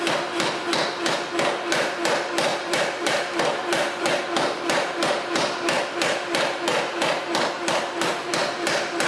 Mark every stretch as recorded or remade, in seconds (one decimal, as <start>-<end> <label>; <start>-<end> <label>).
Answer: 0.0-2.5 recorded; 2.5-4.2 remade; 4.2-9.1 recorded